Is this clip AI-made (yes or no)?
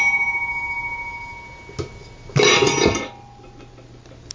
no